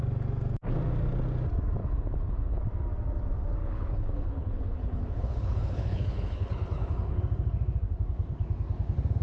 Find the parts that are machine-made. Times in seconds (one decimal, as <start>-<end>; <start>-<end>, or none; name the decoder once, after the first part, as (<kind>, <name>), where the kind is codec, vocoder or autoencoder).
1.8-2.6 (codec, HILCodec); 3.6-7.2